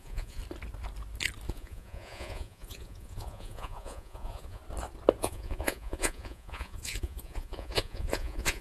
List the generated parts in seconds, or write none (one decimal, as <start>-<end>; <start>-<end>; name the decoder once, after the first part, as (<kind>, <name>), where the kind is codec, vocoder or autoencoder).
0.0-0.4 (vocoder, Vocos); 1.5-4.6; 5.2-8.6